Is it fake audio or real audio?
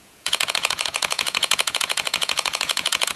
fake